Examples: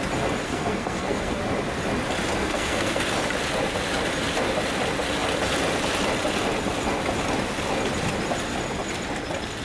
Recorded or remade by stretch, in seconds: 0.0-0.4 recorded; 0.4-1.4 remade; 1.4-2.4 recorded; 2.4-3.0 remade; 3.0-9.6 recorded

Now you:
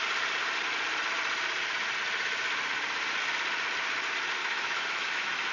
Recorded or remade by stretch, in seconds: 0.0-4.4 recorded; 4.4-5.5 remade

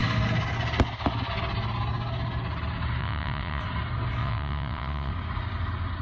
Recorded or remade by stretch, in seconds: 0.0-3.0 recorded; 3.0-3.6 remade; 3.6-4.2 recorded; 4.2-5.1 remade; 5.1-6.0 recorded

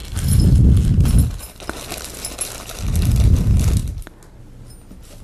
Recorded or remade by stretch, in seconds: 0.0-5.2 recorded

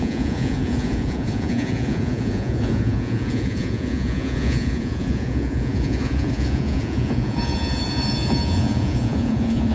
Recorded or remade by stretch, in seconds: 0.0-9.7 remade